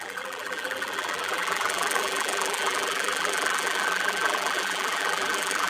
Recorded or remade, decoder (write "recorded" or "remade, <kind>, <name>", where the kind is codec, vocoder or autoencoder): remade, vocoder, BigVGAN v2